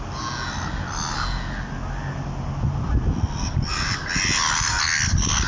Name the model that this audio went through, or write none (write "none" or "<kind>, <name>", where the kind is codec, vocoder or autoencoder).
none